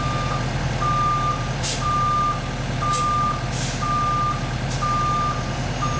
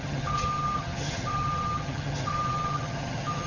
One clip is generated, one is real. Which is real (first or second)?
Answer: first